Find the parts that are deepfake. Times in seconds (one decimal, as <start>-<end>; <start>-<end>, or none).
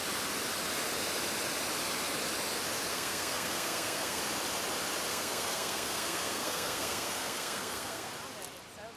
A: 2.9-4.2; 5.1-8.1